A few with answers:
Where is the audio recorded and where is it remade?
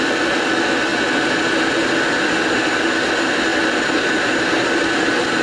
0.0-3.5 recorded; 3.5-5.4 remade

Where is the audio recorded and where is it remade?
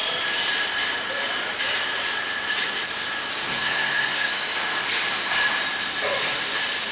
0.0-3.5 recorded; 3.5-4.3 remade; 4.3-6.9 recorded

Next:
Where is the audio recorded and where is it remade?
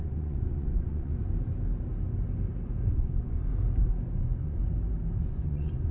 0.0-1.1 remade; 1.1-2.9 recorded; 2.9-3.5 remade; 3.5-4.1 recorded; 4.1-4.6 remade; 4.6-5.2 recorded; 5.2-5.9 remade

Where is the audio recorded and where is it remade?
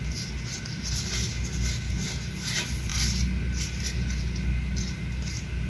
0.0-5.7 recorded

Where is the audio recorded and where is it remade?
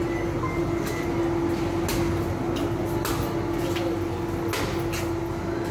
0.0-5.7 recorded